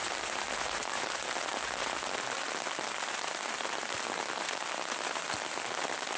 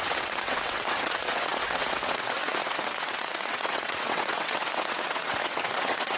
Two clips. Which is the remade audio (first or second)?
second